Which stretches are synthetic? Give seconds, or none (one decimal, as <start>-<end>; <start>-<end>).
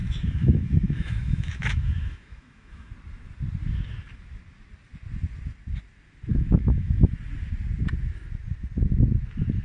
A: 0.0-2.9; 6.3-7.1